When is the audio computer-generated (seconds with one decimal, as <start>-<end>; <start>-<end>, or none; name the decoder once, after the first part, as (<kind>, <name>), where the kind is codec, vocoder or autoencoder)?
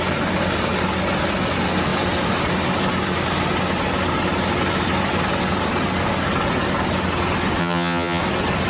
7.6-8.2 (vocoder, HiFi-GAN)